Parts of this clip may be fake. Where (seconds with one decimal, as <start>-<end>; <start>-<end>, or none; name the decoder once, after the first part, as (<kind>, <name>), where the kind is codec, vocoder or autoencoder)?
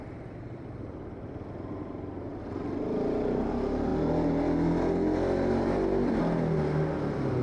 none